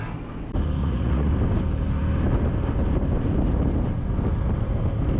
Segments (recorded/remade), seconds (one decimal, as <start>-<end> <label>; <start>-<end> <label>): 0.0-0.8 recorded; 0.8-1.3 remade; 1.3-5.2 recorded

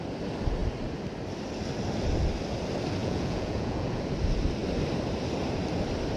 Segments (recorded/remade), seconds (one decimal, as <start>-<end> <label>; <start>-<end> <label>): 0.0-3.0 recorded; 3.0-4.0 remade; 4.0-6.2 recorded

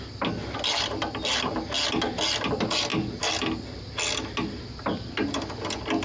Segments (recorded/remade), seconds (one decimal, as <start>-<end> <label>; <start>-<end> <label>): 0.0-6.0 recorded

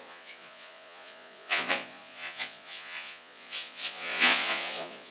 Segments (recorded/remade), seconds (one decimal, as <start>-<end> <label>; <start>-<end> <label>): 0.0-5.1 remade

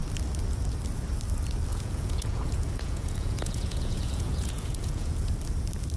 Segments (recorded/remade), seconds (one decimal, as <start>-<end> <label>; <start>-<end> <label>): 0.0-1.7 recorded; 1.7-5.3 remade; 5.3-6.0 recorded

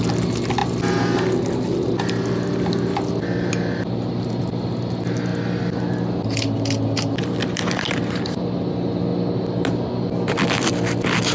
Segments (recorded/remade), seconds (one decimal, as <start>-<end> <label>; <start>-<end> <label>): 0.0-11.3 recorded

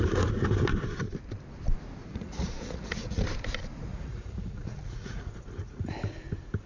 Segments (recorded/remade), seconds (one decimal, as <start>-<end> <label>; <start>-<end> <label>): 0.0-2.1 recorded; 2.1-3.2 remade; 3.2-3.9 recorded; 3.9-5.9 remade; 5.9-6.7 recorded

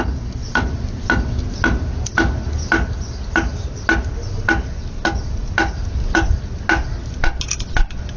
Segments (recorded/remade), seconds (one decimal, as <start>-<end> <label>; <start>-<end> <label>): 0.0-8.2 recorded